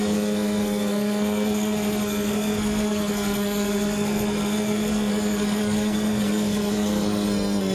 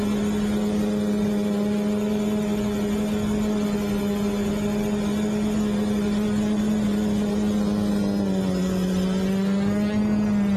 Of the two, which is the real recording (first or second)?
second